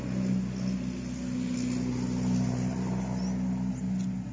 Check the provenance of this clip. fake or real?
real